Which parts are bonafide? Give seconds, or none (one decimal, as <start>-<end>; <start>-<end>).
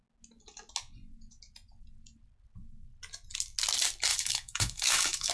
0.0-4.1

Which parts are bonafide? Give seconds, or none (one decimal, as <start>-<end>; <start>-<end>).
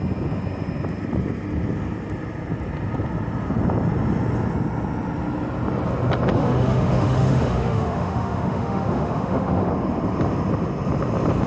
0.0-6.4; 9.7-11.5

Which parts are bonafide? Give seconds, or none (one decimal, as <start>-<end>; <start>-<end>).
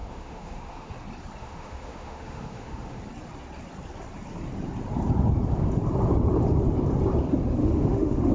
0.9-1.4; 3.0-7.6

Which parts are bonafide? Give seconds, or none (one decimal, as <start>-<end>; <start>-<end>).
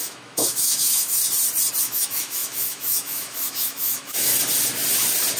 1.2-1.8; 4.3-5.4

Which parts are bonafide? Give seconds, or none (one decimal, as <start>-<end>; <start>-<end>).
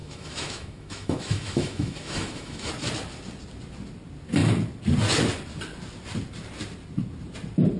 2.7-7.8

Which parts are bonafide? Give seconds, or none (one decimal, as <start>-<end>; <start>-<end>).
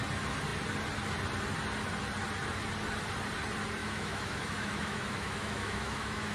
0.0-3.8